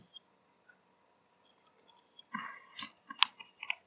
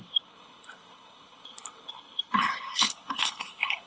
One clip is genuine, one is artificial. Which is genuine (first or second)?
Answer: first